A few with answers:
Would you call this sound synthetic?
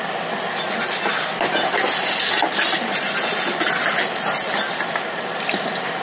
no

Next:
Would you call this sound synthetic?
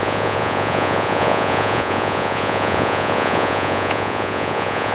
yes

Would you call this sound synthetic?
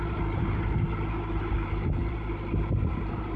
yes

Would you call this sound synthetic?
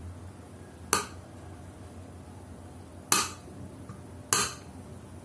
no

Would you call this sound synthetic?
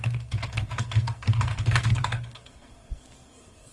yes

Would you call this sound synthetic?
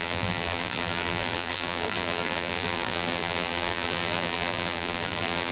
yes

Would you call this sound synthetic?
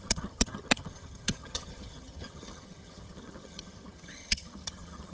yes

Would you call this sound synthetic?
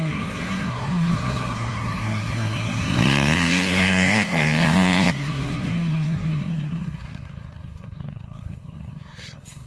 yes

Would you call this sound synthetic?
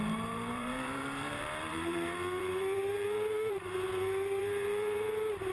yes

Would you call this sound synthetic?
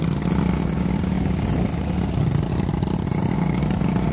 no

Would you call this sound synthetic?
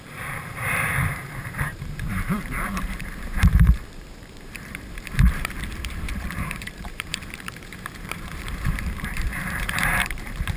yes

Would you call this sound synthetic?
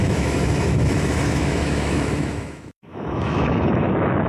yes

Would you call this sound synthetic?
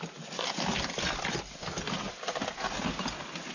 no